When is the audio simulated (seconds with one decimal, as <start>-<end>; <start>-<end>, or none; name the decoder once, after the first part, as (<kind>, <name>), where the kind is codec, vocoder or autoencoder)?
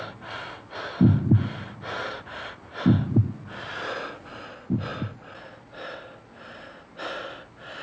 2.0-3.2 (vocoder, BigVGAN v2); 4.9-6.2